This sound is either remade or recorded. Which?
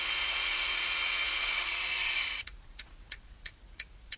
remade